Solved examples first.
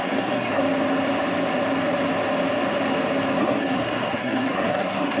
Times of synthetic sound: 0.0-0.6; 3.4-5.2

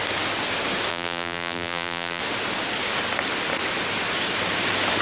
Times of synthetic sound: 0.9-2.2

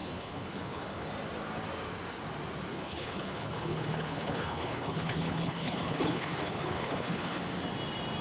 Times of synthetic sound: 0.0-1.1; 2.7-7.4

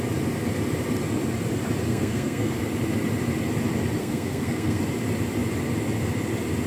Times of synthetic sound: 1.9-2.6; 4.0-4.8